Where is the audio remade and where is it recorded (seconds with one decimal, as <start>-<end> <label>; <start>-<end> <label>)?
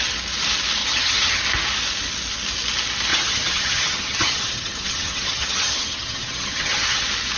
0.0-0.8 recorded; 0.8-1.4 remade; 1.4-3.1 recorded; 3.1-7.0 remade; 7.0-7.4 recorded